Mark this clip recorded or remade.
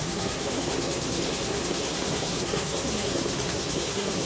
remade